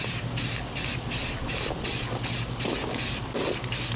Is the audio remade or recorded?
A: recorded